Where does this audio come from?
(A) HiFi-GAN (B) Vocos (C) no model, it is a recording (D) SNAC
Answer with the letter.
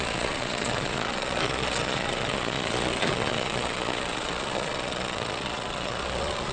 B